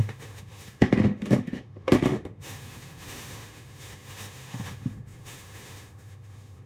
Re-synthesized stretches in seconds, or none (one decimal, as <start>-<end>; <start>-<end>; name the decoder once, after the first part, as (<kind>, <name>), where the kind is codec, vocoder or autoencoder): 0.0-6.7 (autoencoder, DAC-VAE)